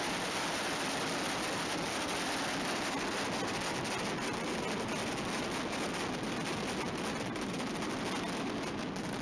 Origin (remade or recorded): recorded